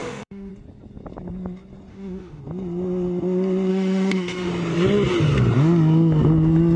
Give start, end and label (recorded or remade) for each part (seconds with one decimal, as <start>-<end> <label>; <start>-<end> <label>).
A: 0.0-0.5 remade; 0.5-1.9 recorded; 1.9-2.4 remade; 2.4-3.7 recorded; 3.7-4.5 remade; 4.5-6.8 recorded